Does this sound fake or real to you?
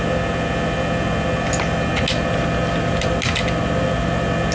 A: real